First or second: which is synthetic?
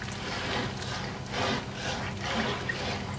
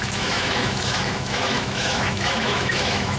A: second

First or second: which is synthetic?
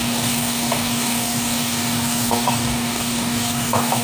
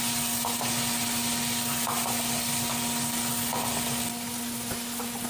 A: first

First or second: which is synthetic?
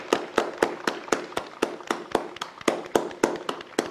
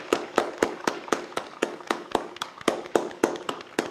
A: second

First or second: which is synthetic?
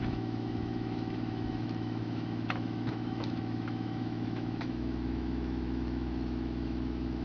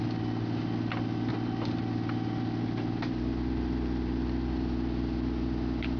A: first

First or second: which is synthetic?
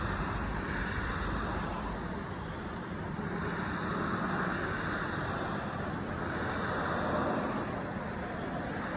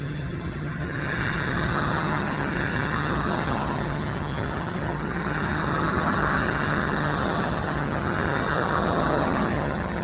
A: second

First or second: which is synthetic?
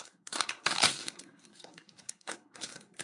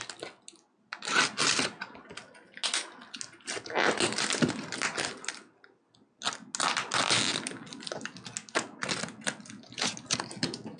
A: first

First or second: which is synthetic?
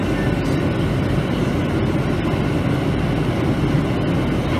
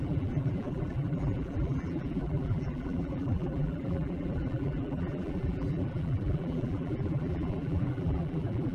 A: second